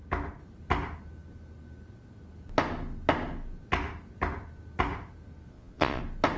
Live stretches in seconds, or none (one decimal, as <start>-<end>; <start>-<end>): 0.0-5.5; 6.0-6.4